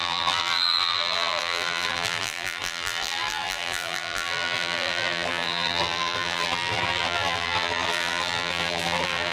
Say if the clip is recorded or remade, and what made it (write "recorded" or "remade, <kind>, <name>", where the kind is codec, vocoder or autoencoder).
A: remade, vocoder, BigVGAN v2